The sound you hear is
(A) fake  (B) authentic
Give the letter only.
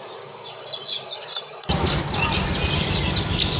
B